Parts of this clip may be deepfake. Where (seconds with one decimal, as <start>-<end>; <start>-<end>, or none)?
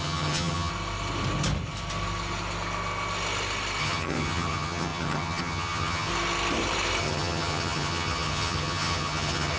0.0-0.7; 3.8-6.1; 7.0-9.6